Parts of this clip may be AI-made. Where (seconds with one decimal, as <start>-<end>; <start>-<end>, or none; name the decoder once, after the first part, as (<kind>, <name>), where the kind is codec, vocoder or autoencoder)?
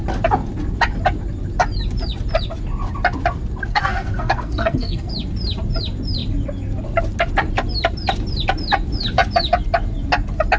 3.7-5.1 (codec, SNAC)